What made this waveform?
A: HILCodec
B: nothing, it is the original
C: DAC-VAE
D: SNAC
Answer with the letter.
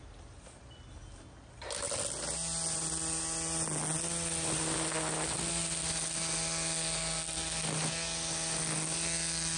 B